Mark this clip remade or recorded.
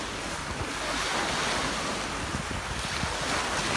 recorded